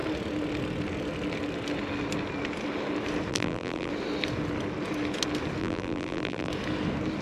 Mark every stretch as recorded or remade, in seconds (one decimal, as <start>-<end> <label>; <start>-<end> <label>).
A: 0.0-3.3 recorded; 3.3-3.9 remade; 3.9-5.6 recorded; 5.6-6.5 remade; 6.5-7.2 recorded